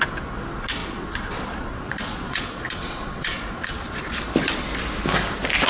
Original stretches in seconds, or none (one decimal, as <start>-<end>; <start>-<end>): 0.0-0.8; 4.2-5.7